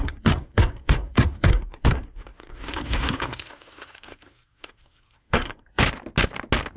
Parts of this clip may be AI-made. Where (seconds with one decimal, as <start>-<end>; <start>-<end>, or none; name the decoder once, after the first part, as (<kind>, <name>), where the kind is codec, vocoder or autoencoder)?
0.0-5.8 (codec, SNAC)

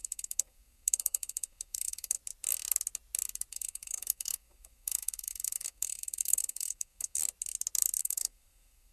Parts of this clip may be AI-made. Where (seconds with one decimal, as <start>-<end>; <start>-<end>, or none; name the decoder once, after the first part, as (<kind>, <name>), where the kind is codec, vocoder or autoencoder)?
0.0-2.2 (codec, SNAC); 3.5-7.2; 8.0-8.9

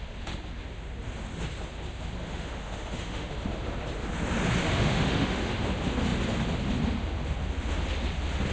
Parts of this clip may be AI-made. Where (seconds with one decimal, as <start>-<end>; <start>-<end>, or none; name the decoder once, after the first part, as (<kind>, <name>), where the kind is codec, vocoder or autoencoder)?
2.2-3.3 (autoencoder, DAC-VAE); 4.6-5.5

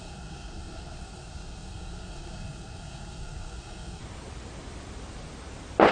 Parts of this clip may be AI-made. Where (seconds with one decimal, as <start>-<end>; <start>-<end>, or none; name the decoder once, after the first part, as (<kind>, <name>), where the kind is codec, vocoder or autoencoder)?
0.0-4.0 (codec, SNAC)

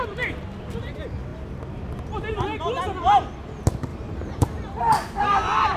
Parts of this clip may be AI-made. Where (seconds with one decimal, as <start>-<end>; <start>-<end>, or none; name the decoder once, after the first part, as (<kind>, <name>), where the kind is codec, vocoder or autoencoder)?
3.9-5.2 (vocoder, BigVGAN v2)

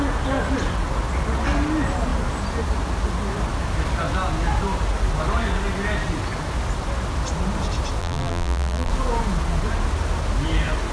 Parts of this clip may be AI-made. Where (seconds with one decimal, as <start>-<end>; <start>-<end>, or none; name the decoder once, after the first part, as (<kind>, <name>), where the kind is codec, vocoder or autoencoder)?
8.0-8.9 (vocoder, BigVGAN v2)